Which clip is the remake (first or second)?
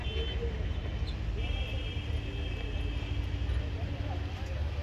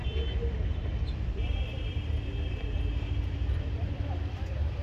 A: second